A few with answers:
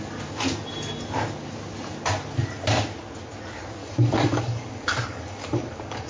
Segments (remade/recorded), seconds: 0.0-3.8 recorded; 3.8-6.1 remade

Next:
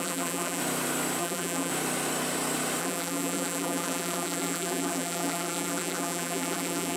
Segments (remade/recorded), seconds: 0.0-0.6 remade; 0.6-1.2 recorded; 1.2-1.7 remade; 1.7-2.8 recorded; 2.8-7.0 remade

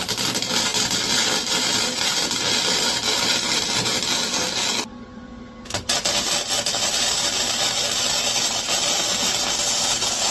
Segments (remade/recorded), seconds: 0.0-10.3 recorded

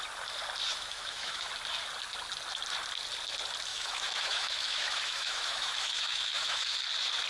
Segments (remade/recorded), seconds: 0.0-0.7 recorded; 0.7-1.5 remade; 1.5-3.7 recorded; 3.7-6.8 remade; 6.8-7.3 recorded

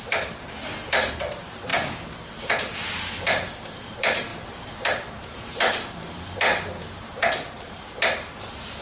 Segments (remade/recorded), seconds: 0.0-1.7 remade; 1.7-2.3 recorded; 2.3-8.8 remade

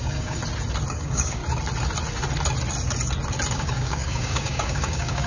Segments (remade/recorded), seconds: 0.0-0.4 remade; 0.4-0.9 recorded; 0.9-1.4 remade; 1.4-3.5 recorded; 3.5-5.3 remade

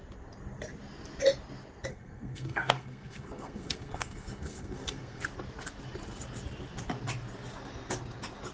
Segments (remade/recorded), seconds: 0.0-1.9 recorded; 1.9-5.2 remade; 5.2-8.5 recorded

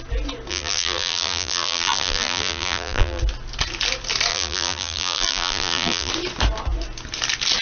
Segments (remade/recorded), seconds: 0.0-0.5 recorded; 0.5-3.2 remade; 3.2-4.3 recorded; 4.3-6.1 remade; 6.1-7.6 recorded